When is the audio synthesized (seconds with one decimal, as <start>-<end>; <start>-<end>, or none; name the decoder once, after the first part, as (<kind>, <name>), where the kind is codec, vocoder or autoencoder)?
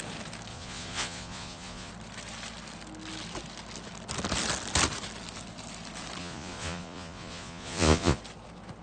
0.5-1.9 (vocoder, Vocos); 6.2-8.2